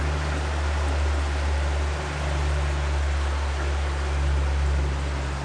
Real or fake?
real